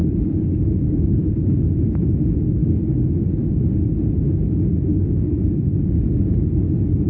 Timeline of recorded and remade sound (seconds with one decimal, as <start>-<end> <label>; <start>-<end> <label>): 0.0-1.7 remade; 1.7-2.6 recorded; 2.6-3.5 remade; 3.5-4.9 recorded; 4.9-6.2 remade; 6.2-7.1 recorded

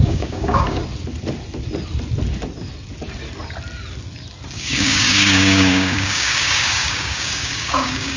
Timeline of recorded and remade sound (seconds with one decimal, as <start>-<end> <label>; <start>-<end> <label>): 0.0-0.8 remade; 0.8-4.5 recorded; 4.5-8.2 remade

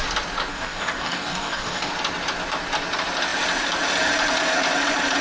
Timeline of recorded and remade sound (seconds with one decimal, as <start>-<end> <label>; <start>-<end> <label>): 0.0-0.5 recorded; 0.5-1.9 remade; 1.9-5.2 recorded